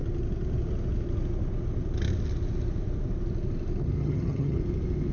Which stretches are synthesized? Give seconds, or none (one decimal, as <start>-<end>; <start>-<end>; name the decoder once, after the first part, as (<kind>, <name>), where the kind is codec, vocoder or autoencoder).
4.0-4.6 (vocoder, HiFi-GAN)